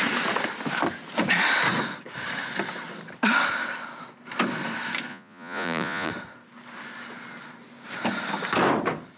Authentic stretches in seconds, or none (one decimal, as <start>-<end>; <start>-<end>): 0.0-5.1; 6.1-9.2